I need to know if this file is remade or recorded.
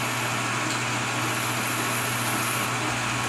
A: recorded